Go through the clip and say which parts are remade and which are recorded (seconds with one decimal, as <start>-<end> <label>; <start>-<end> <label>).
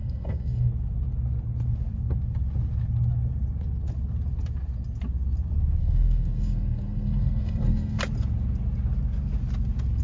0.0-0.7 remade; 0.7-5.8 recorded; 5.8-8.0 remade; 8.0-10.0 recorded